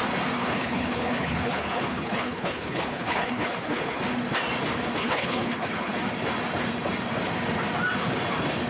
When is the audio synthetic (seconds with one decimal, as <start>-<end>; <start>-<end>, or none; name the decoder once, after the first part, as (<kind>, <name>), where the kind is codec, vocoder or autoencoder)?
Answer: 0.4-4.0 (codec, HILCodec); 5.0-6.0